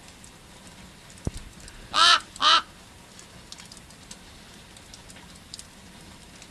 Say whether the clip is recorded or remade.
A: recorded